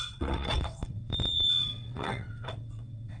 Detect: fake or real fake